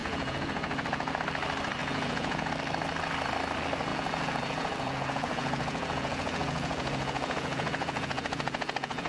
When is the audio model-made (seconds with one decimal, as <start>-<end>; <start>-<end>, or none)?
0.0-1.2; 1.8-2.5; 3.9-9.1

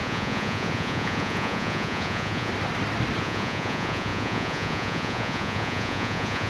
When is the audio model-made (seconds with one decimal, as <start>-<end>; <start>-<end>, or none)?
0.0-2.5; 3.2-6.5

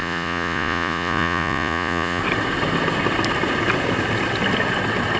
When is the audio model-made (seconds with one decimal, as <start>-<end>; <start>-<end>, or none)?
0.0-2.2

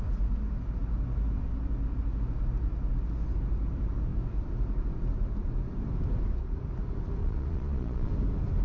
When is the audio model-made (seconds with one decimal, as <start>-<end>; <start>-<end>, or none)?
7.2-8.1

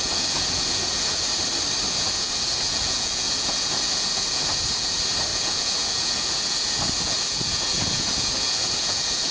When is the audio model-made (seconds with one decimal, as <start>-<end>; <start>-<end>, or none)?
0.0-1.3; 1.9-9.3

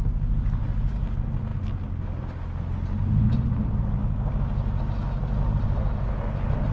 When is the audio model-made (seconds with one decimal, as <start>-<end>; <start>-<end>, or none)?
none

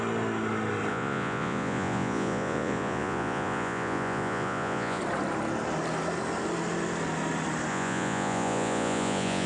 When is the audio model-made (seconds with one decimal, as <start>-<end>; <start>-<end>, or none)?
0.9-5.0; 7.7-9.5